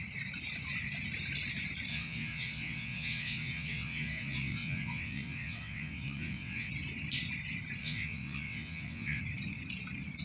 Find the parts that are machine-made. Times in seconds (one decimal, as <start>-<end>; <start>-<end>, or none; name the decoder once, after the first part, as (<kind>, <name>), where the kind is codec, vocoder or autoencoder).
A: 1.9-6.7 (vocoder, WaveNeXt); 7.8-9.2